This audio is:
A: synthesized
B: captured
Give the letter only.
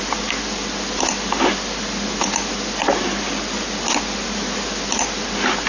B